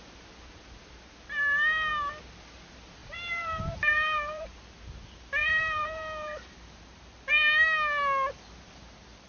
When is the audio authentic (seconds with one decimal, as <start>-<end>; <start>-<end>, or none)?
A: 0.0-3.0; 4.5-5.4; 7.3-9.3